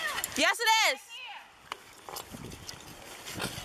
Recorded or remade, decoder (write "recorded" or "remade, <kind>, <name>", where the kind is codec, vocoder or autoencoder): recorded